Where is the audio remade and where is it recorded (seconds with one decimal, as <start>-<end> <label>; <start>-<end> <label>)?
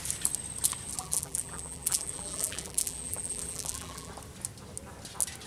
0.0-1.0 recorded; 1.0-4.1 remade; 4.1-5.5 recorded